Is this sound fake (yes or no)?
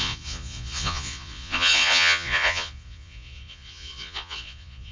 yes